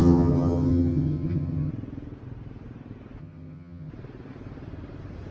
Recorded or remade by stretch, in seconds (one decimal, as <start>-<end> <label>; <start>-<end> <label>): 0.0-1.7 remade; 1.7-3.2 recorded; 3.2-3.9 remade; 3.9-5.3 recorded